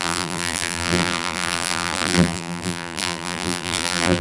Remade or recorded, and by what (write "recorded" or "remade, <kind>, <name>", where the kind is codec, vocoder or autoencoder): remade, vocoder, BigVGAN v2